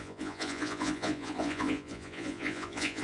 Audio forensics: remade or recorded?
remade